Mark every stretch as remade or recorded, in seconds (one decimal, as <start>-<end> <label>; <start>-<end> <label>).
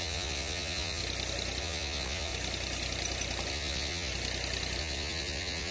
0.0-1.0 remade; 1.0-1.6 recorded; 1.6-2.3 remade; 2.3-3.5 recorded; 3.5-4.1 remade; 4.1-4.8 recorded; 4.8-5.7 remade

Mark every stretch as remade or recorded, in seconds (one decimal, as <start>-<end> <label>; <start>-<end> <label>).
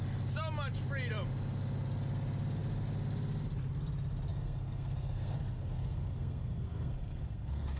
0.0-4.3 recorded; 4.3-7.8 remade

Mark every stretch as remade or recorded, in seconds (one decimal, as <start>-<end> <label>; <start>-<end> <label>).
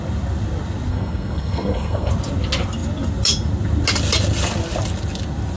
0.0-0.9 recorded; 0.9-2.1 remade; 2.1-5.6 recorded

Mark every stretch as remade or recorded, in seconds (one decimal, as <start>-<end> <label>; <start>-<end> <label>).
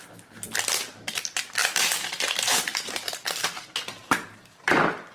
0.0-1.6 recorded; 1.6-3.3 remade; 3.3-4.0 recorded; 4.0-5.1 remade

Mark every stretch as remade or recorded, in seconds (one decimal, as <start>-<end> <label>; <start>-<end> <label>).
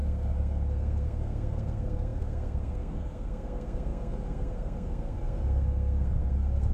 0.0-6.7 remade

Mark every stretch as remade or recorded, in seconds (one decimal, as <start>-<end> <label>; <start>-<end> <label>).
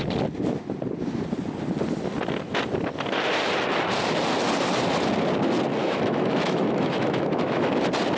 0.0-5.8 recorded; 5.8-7.7 remade; 7.7-8.2 recorded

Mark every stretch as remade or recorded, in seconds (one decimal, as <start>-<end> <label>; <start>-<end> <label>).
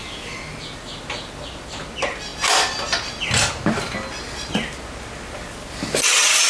0.0-6.5 recorded